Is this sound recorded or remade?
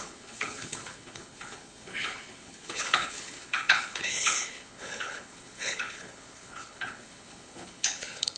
remade